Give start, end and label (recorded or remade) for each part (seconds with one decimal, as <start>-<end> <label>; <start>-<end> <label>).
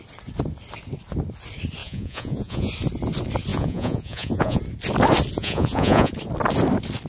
0.0-1.8 recorded; 1.8-2.7 remade; 2.7-3.5 recorded; 3.5-4.6 remade; 4.6-5.4 recorded; 5.4-6.1 remade; 6.1-7.1 recorded